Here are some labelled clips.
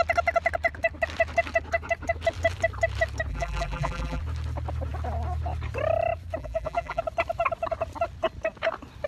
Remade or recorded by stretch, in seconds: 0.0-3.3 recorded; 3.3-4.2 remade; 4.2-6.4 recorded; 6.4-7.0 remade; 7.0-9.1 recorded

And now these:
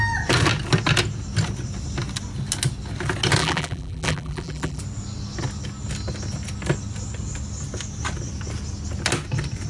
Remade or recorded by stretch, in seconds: 0.0-3.4 recorded; 3.4-4.8 remade; 4.8-9.7 recorded

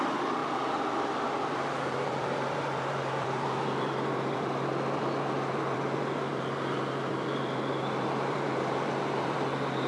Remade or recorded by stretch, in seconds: 0.0-9.9 remade

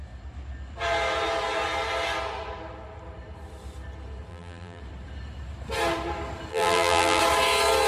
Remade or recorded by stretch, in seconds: 0.0-4.3 recorded; 4.3-4.8 remade; 4.8-6.5 recorded; 6.5-7.2 remade; 7.2-7.9 recorded

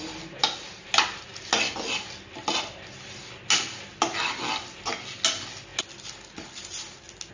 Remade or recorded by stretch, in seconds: 0.0-7.3 recorded

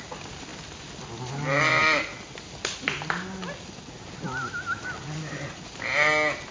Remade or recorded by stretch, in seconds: 0.0-6.5 recorded

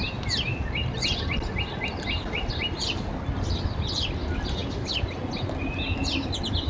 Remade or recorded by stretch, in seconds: 0.0-6.7 recorded

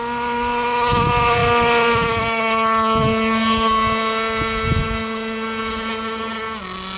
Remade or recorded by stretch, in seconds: 0.0-7.0 recorded